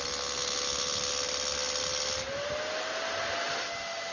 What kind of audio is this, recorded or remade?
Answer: recorded